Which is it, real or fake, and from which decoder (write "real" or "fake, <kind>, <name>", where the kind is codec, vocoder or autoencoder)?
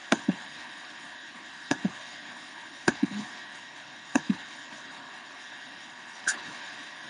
fake, codec, HILCodec